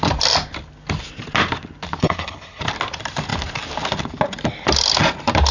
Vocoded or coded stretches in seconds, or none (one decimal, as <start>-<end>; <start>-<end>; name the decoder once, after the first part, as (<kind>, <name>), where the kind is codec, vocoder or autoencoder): 2.0-2.6 (codec, HILCodec)

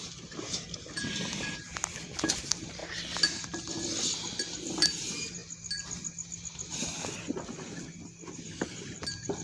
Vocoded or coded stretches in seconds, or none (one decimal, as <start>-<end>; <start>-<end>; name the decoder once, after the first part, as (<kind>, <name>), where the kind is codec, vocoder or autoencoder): 0.0-1.7 (vocoder, BigVGAN v2); 2.3-2.8; 4.8-5.4; 8.4-9.4